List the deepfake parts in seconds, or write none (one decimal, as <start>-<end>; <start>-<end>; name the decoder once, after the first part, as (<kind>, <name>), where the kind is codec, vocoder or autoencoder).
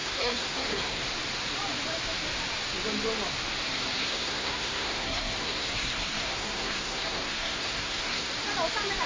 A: 0.0-1.0 (codec, SNAC); 4.0-8.3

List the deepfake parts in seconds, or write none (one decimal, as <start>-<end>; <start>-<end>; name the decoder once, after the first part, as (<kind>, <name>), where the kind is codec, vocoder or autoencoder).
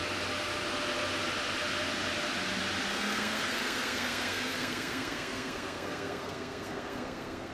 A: 2.9-7.5 (codec, SNAC)